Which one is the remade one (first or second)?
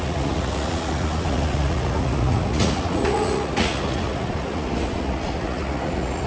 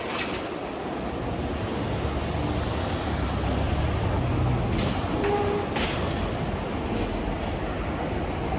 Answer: first